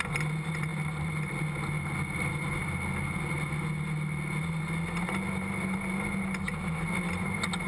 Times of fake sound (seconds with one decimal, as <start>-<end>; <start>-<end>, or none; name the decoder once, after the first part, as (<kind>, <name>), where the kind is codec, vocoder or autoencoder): none